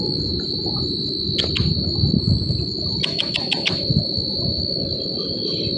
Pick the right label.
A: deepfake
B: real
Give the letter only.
B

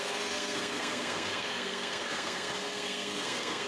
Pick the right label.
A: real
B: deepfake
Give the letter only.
B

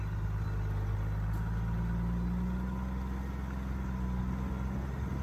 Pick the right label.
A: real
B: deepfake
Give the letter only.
A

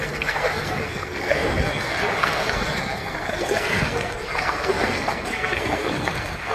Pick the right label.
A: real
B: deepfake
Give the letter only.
B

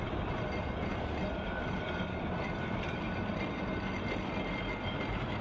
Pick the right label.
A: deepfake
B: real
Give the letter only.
B